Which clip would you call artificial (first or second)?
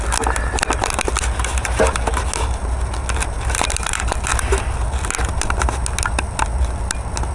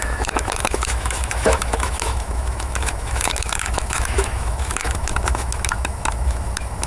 second